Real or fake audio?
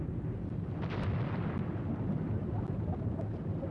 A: real